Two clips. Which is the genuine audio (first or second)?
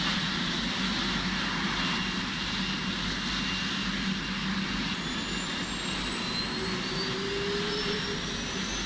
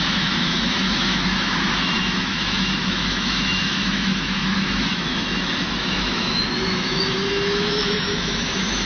first